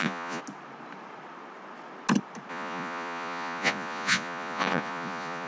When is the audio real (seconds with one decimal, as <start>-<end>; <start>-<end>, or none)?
0.4-2.5